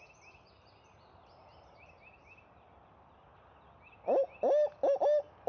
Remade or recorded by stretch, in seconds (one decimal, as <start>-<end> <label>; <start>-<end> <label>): 0.0-5.5 recorded